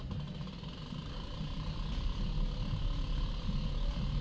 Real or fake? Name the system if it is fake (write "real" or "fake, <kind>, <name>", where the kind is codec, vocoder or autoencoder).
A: real